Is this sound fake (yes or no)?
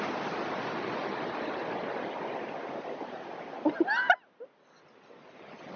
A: no